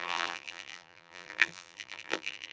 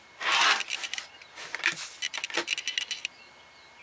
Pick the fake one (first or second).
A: first